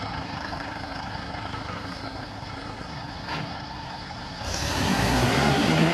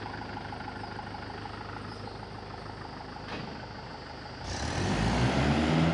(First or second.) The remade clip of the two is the first